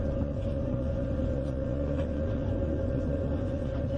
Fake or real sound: fake